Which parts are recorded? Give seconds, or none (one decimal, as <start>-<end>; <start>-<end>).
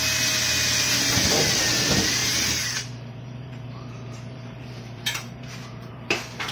0.0-2.2; 6.1-6.5